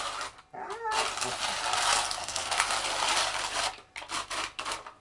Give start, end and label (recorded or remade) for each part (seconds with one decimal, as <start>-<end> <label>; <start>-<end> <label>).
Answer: 0.0-2.2 recorded; 2.2-2.7 remade; 2.7-5.0 recorded